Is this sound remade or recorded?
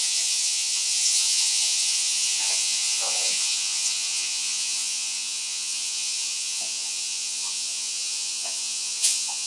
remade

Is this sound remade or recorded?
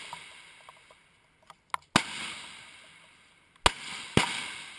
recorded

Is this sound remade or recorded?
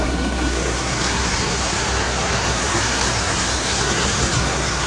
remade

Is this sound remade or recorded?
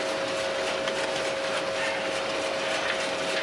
recorded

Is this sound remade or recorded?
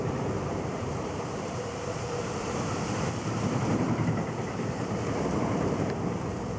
remade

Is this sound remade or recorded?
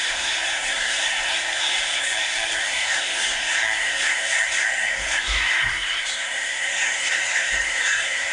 remade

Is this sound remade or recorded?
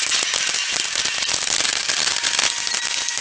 recorded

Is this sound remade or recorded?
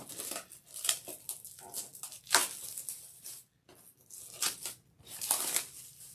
recorded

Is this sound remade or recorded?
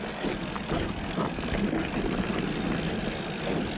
recorded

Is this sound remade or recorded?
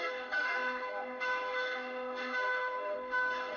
remade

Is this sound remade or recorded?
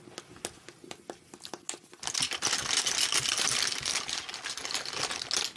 recorded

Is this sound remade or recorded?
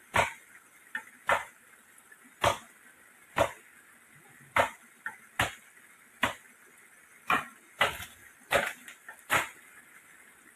recorded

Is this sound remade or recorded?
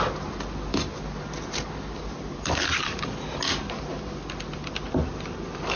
recorded